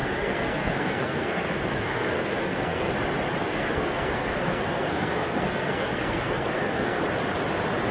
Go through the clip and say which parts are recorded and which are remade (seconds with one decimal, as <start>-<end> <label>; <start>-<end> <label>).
0.0-2.9 remade; 2.9-3.4 recorded; 3.4-7.0 remade; 7.0-7.9 recorded